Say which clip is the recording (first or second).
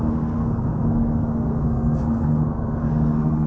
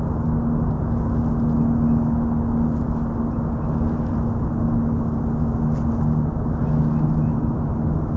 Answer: second